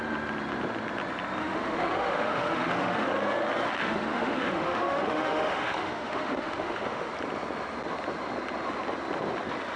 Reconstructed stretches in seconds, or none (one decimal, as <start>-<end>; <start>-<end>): 1.4-3.1; 3.8-7.1